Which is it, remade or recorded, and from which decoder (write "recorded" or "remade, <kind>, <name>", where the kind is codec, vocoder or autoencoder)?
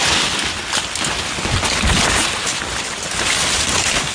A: recorded